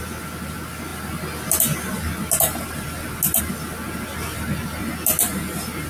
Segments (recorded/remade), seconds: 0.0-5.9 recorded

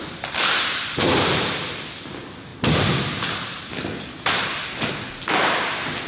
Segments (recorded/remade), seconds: 0.0-6.1 recorded

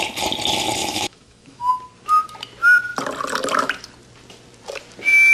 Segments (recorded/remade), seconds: 0.0-0.8 recorded; 0.8-1.7 remade; 1.7-5.3 recorded

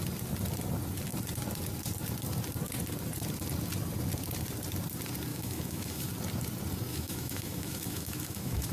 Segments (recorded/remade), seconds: 0.0-5.3 recorded; 5.3-6.1 remade; 6.1-6.9 recorded; 6.9-8.7 remade

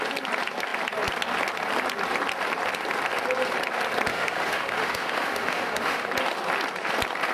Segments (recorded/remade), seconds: 0.0-4.1 recorded; 4.1-6.1 remade; 6.1-7.3 recorded

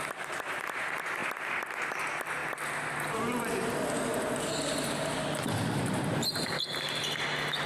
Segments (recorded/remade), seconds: 0.0-7.7 recorded

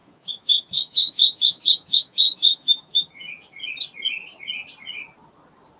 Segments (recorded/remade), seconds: 0.0-3.3 remade; 3.3-5.8 recorded

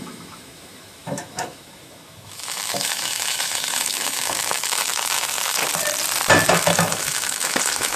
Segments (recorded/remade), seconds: 0.0-5.6 remade; 5.6-6.5 recorded; 6.5-8.0 remade